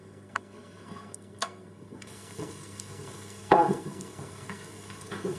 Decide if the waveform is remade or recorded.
remade